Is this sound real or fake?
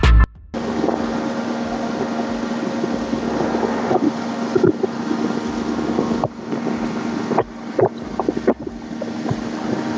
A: real